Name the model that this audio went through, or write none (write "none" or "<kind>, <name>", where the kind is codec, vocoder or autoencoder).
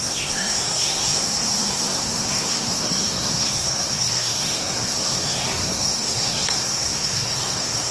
codec, SNAC